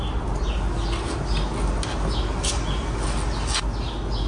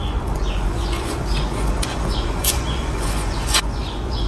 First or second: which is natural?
first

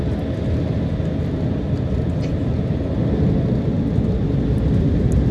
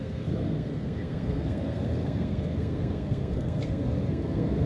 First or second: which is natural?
first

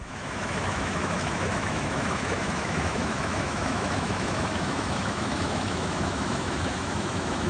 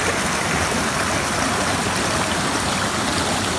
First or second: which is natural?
second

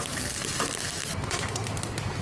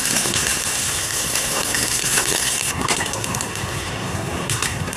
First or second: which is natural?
first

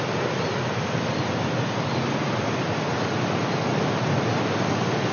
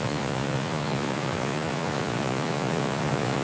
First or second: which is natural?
first